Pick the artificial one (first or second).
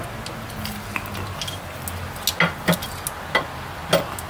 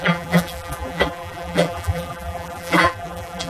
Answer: second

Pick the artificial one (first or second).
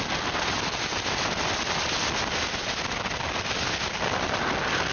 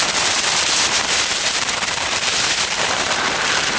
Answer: second